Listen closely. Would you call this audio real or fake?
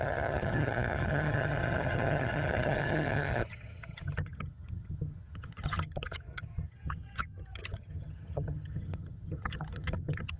fake